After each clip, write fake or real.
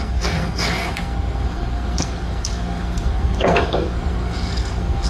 fake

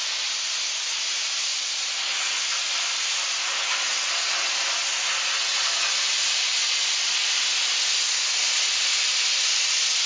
real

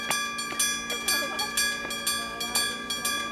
real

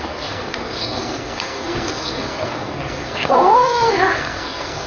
fake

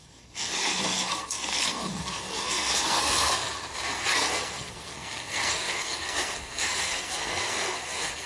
fake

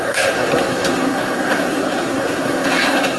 fake